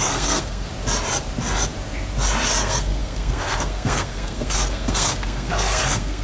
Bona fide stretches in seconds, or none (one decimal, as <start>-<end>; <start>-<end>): 0.7-2.6